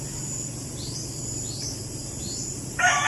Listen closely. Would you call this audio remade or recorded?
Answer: remade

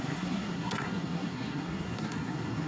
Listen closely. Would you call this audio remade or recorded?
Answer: remade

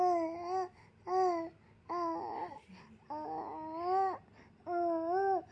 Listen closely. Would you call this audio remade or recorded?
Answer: recorded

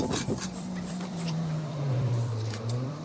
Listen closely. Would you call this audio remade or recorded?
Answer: remade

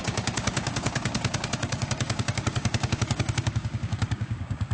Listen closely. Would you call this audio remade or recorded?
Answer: remade